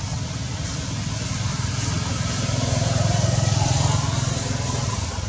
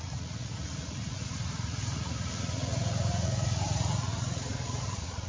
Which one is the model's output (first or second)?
second